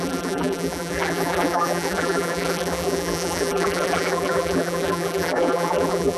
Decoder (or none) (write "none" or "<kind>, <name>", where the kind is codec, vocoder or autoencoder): vocoder, BigVGAN v2